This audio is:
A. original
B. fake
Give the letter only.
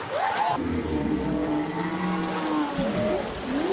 A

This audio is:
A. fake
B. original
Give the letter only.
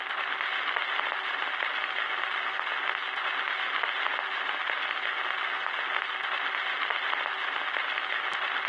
B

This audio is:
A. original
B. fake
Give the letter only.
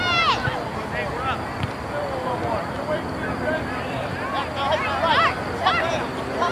A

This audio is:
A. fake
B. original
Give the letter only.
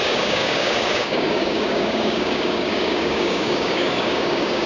A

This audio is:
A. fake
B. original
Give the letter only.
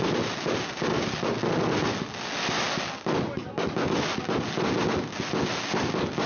B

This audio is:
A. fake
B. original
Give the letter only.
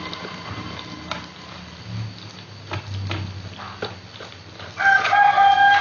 B